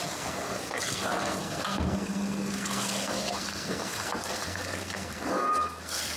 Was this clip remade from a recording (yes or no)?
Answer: yes